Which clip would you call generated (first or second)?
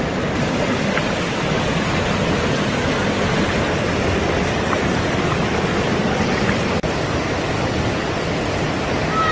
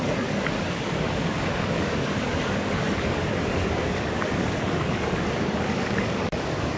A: second